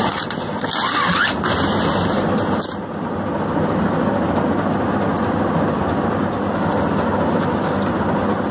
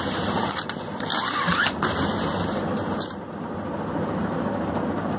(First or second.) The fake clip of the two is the second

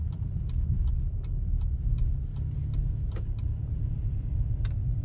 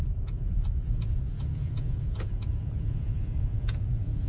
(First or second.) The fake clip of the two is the second